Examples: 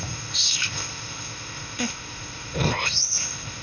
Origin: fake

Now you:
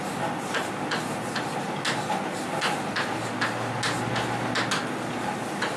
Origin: real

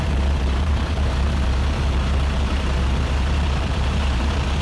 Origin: fake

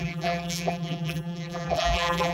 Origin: fake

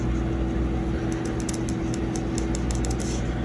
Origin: real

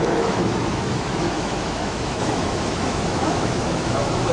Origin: fake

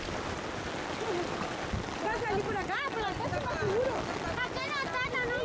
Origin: real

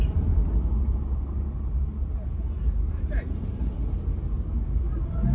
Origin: real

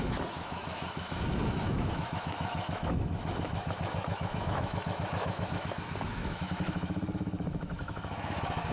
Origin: fake